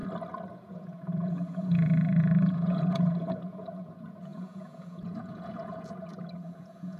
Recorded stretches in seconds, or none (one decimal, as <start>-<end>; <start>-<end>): 0.0-0.5

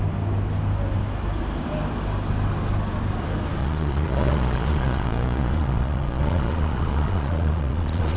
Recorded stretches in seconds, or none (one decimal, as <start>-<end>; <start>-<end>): 0.0-3.6

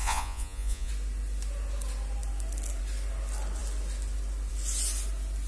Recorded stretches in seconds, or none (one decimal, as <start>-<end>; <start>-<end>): 0.9-5.5

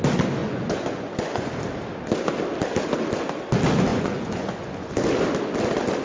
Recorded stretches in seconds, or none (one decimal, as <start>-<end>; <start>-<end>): 0.0-0.4; 1.5-3.9; 4.9-6.0

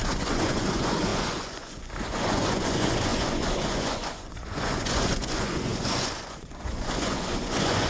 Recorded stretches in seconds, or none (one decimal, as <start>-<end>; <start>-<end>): none

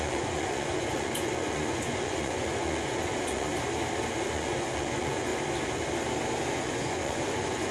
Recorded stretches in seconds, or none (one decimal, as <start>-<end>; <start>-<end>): 3.5-4.3; 5.3-6.5

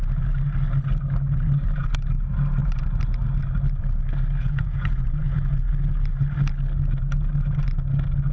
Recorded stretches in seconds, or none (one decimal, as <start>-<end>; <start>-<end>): 0.0-4.4; 5.7-8.3